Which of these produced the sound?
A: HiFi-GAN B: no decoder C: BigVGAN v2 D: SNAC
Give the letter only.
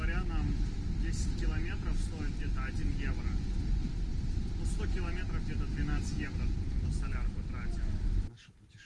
B